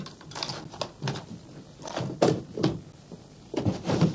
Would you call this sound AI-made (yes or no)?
no